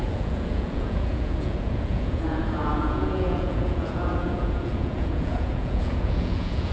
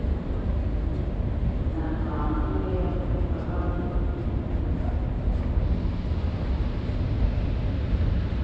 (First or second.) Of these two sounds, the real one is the second